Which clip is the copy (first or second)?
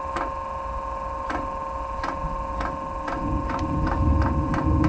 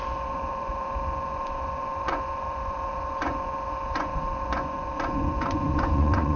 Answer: second